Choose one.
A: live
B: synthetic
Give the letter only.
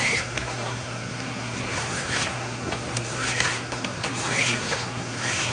B